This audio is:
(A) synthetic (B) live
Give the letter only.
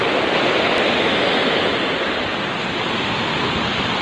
B